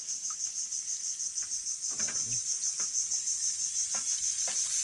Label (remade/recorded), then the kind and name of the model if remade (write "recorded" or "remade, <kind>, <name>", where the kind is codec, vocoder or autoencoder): recorded